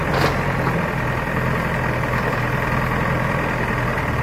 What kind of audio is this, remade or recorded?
remade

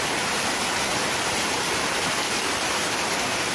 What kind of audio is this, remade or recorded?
remade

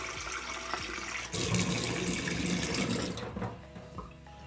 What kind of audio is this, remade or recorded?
recorded